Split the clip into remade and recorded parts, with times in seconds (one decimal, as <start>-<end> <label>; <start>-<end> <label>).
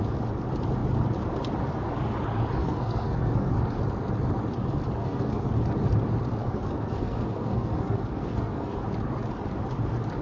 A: 0.0-2.6 recorded; 2.6-3.5 remade; 3.5-5.0 recorded; 5.0-5.5 remade; 5.5-6.4 recorded; 6.4-8.7 remade; 8.7-10.2 recorded